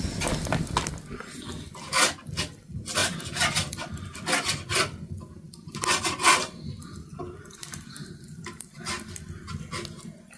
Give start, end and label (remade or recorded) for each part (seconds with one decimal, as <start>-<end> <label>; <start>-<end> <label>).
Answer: 0.0-10.4 recorded